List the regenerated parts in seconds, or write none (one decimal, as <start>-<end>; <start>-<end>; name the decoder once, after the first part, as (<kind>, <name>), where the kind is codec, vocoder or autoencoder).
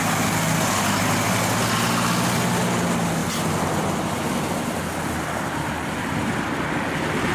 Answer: none